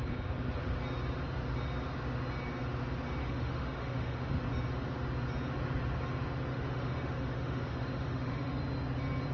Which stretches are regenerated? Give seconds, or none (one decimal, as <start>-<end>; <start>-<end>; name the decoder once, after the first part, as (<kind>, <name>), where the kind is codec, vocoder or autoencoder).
3.2-4.3 (autoencoder, DAC-VAE); 6.5-8.6